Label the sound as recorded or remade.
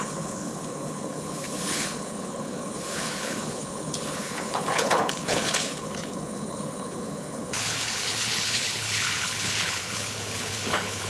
remade